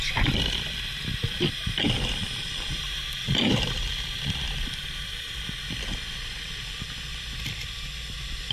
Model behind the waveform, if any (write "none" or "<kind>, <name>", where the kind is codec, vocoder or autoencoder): vocoder, BigVGAN v2